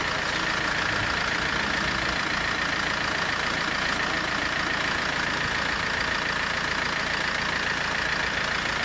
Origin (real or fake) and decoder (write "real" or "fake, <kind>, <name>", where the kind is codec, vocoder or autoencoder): real